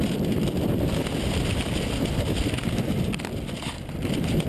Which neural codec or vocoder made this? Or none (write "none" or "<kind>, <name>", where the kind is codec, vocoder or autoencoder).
none